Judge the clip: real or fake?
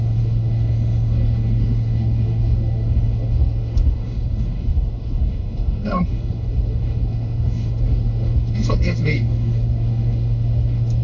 fake